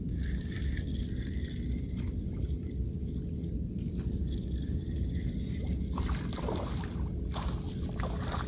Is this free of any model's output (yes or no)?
yes